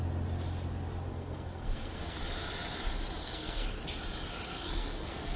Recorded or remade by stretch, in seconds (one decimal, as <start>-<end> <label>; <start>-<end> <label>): 0.0-1.1 recorded; 1.1-2.2 remade; 2.2-3.2 recorded; 3.2-3.8 remade; 3.8-4.5 recorded; 4.5-5.4 remade

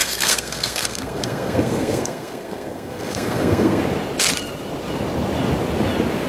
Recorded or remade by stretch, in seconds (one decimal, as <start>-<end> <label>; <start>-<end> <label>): 0.0-3.8 remade; 3.8-6.3 recorded

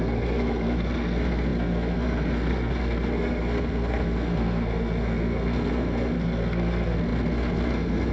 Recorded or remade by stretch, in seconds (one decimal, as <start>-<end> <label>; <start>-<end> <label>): 0.0-8.1 remade

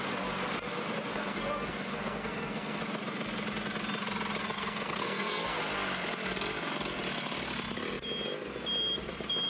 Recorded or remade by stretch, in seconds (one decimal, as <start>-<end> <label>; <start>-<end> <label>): 0.0-1.1 recorded; 1.1-2.8 remade; 2.8-4.4 recorded; 4.4-5.6 remade; 5.6-9.5 recorded

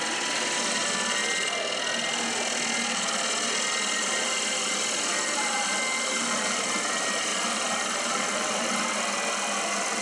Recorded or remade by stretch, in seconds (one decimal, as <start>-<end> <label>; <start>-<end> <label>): 0.0-10.0 recorded

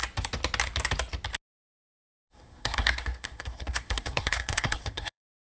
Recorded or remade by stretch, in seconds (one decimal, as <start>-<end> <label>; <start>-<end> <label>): 0.0-1.8 recorded; 1.8-5.5 remade